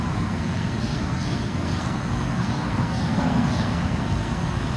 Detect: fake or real fake